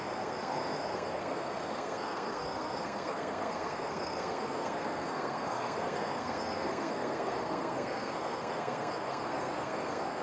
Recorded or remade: remade